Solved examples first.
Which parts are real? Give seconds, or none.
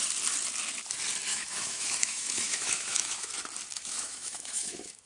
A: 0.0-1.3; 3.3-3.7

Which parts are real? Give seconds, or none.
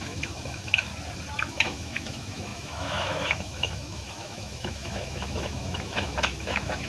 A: 0.9-1.5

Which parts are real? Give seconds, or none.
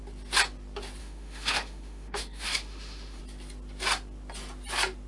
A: 0.0-1.0; 3.2-5.1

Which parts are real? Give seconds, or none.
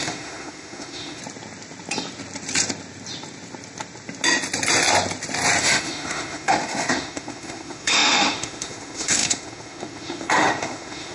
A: 1.2-5.6